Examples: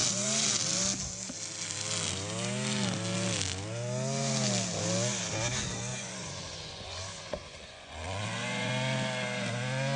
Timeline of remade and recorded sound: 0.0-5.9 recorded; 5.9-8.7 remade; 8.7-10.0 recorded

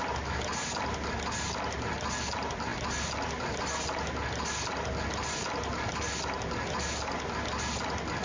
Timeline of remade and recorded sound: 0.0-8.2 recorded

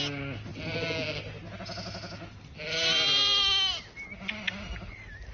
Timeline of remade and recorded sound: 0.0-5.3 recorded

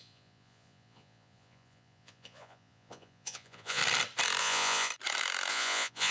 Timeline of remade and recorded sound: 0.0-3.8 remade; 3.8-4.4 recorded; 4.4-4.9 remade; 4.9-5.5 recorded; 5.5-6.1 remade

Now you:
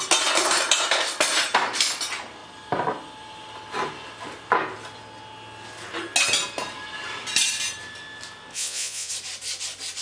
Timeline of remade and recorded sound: 0.0-8.5 recorded; 8.5-9.1 remade; 9.1-10.0 recorded

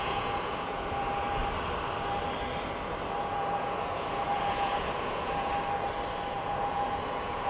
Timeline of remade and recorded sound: 0.0-1.4 remade; 1.4-3.2 recorded; 3.2-5.5 remade; 5.5-6.3 recorded; 6.3-7.5 remade

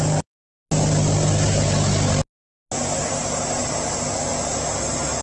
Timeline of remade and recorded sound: 0.0-5.2 recorded